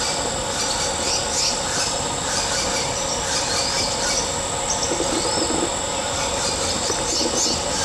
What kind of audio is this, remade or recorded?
recorded